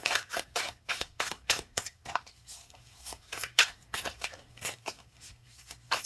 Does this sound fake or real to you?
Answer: fake